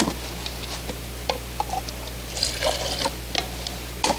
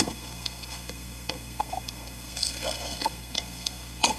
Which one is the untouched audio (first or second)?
first